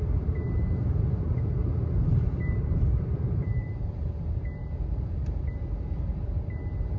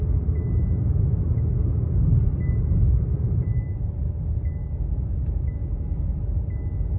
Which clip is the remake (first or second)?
first